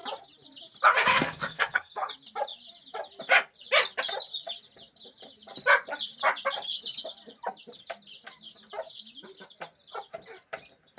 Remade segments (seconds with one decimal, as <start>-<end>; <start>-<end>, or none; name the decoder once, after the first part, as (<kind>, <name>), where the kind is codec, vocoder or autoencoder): 1.1-2.1 (codec, SNAC)